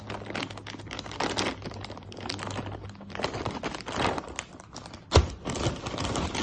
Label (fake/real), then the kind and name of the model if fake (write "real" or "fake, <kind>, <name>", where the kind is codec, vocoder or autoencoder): real